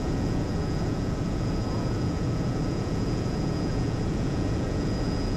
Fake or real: fake